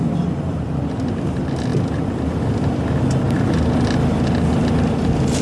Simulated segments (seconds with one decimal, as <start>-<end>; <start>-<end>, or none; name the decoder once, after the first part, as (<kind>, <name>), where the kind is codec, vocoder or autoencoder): none